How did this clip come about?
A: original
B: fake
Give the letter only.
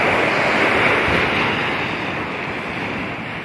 A